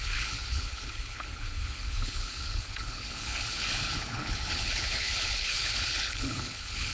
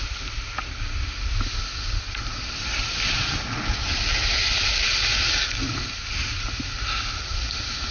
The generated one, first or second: first